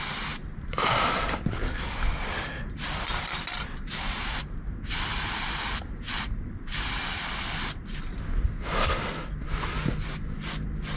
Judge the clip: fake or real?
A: real